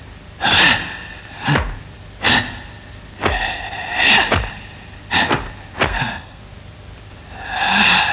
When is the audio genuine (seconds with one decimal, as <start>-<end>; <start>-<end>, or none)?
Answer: 0.0-5.9; 6.4-8.1